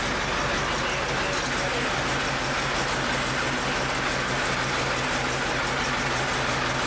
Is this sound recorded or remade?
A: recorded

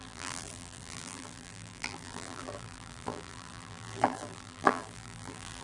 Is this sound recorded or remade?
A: remade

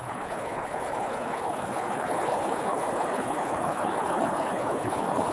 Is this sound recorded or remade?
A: remade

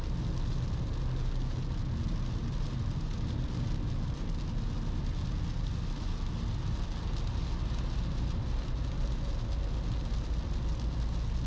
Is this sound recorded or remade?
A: recorded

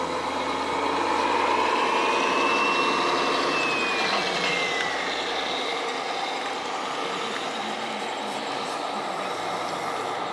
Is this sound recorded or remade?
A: recorded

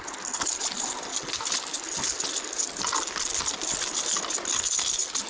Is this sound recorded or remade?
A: recorded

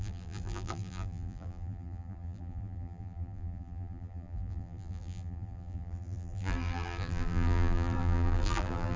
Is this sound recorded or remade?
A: remade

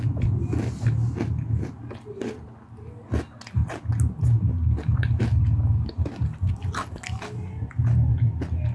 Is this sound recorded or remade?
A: recorded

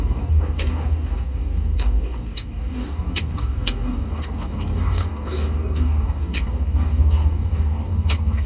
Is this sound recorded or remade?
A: remade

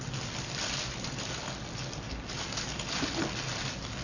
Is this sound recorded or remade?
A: recorded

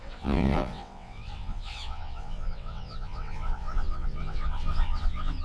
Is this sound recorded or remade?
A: remade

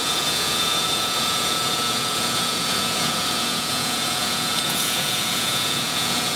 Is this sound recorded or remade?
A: remade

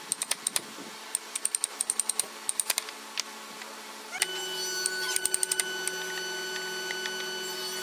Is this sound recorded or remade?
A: recorded